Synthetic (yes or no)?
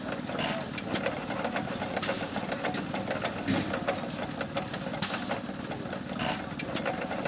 no